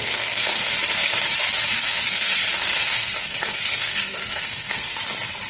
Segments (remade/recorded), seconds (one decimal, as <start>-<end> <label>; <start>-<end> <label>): 0.0-0.7 remade; 0.7-1.7 recorded; 1.7-5.0 remade; 5.0-5.5 recorded